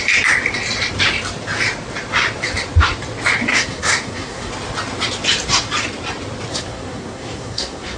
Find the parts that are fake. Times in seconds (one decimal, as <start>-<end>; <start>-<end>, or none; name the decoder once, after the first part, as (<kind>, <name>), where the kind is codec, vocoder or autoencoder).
3.5-4.5 (codec, SNAC); 6.5-8.0